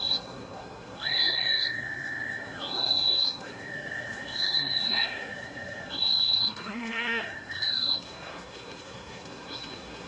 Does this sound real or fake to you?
fake